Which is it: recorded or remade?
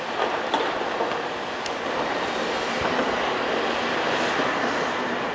recorded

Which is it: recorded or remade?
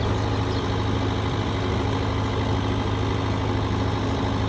recorded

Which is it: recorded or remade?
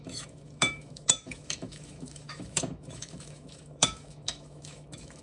remade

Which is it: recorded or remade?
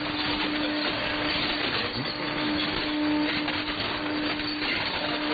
recorded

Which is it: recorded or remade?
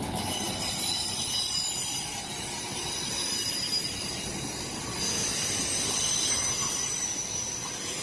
recorded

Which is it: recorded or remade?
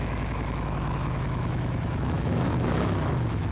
remade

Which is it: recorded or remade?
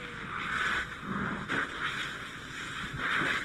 recorded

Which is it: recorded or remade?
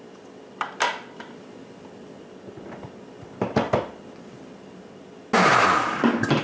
recorded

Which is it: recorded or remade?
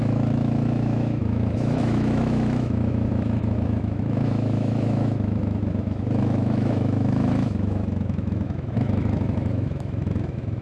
remade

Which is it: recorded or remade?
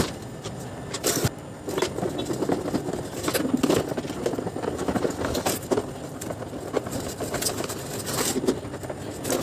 recorded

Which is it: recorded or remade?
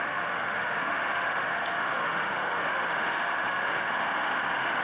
remade